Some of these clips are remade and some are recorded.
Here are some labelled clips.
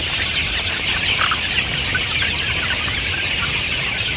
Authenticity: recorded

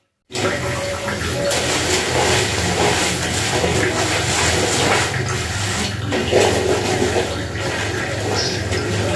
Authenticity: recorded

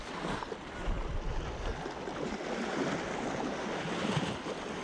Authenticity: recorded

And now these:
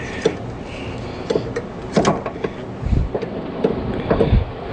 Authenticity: recorded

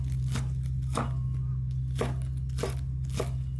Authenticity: recorded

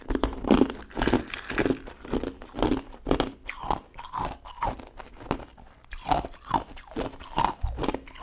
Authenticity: recorded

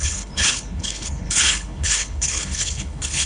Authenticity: remade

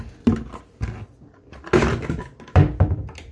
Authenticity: recorded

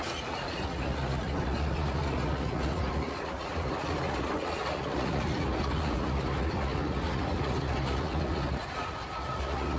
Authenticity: remade